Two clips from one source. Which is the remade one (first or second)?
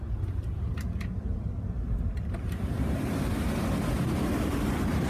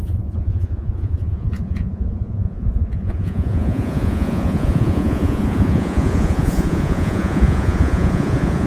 second